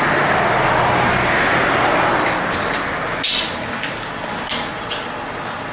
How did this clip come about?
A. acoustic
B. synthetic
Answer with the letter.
A